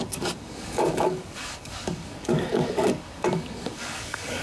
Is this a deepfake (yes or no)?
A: yes